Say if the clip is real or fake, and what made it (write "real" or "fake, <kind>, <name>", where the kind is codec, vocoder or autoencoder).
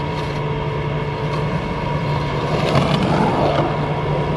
real